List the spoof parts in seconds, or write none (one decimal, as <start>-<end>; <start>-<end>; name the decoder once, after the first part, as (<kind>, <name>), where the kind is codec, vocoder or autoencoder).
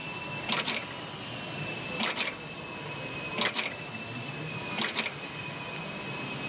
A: none